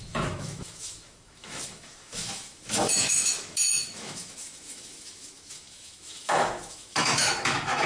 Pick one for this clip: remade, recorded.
remade